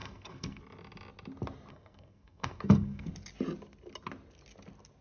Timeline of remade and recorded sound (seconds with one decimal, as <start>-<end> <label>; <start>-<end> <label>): 0.0-0.6 remade; 0.6-1.7 recorded; 1.7-3.1 remade; 3.1-5.0 recorded